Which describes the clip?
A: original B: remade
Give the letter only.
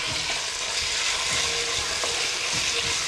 A